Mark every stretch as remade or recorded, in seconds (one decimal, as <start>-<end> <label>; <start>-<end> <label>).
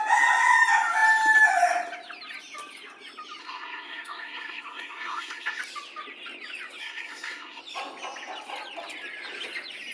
0.0-3.4 recorded; 3.4-5.6 remade; 5.6-6.8 recorded; 6.8-7.6 remade; 7.6-9.9 recorded